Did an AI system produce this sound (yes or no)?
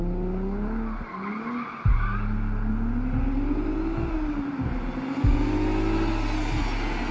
no